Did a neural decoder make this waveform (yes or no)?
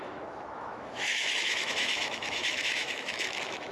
yes